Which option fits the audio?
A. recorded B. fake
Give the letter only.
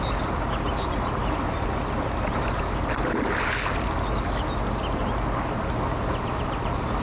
A